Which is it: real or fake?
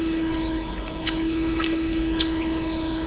fake